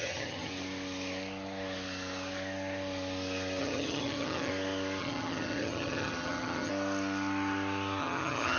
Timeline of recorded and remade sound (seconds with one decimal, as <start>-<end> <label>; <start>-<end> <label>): 0.0-0.5 remade; 0.5-3.6 recorded; 3.6-4.5 remade; 4.5-5.0 recorded; 5.0-6.7 remade; 6.7-8.0 recorded; 8.0-8.6 remade